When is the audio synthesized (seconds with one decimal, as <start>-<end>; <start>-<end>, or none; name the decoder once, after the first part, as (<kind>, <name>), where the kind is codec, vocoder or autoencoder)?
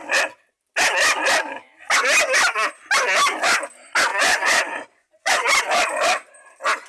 4.1-5.6 (vocoder, Vocos)